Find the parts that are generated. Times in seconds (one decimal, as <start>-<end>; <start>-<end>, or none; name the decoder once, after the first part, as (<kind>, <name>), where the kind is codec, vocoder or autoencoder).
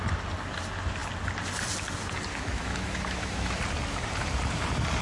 2.3-3.6 (autoencoder, DAC-VAE)